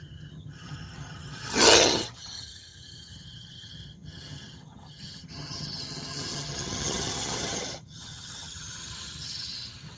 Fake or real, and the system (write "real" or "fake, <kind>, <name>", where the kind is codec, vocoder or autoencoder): fake, vocoder, HiFi-GAN